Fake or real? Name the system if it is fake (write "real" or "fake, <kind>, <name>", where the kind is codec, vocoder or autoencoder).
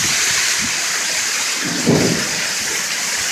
real